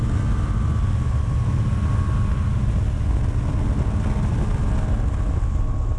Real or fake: real